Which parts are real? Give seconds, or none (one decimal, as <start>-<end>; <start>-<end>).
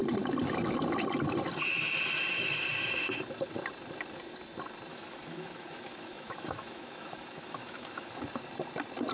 0.0-4.9; 8.2-9.1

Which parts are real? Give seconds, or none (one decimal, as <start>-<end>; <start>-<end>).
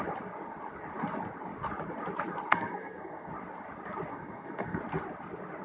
0.0-2.5; 3.3-4.1; 4.8-5.6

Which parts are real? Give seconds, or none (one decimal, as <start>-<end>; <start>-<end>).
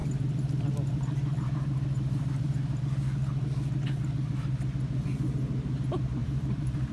2.8-6.2